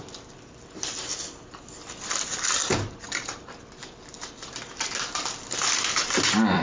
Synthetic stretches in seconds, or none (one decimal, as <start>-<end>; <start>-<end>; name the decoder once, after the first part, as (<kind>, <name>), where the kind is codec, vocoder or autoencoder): 0.0-6.6 (vocoder, BigVGAN v2)